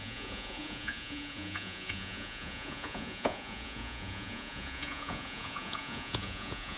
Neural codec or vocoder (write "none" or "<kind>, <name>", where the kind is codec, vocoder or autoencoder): vocoder, Vocos